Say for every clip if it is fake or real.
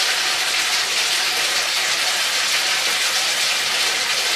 real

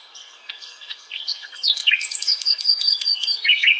fake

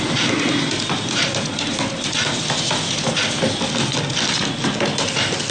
real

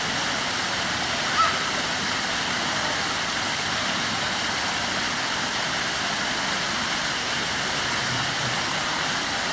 real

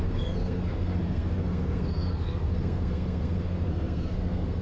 fake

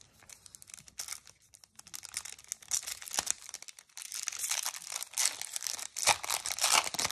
real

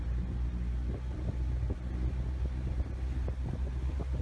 real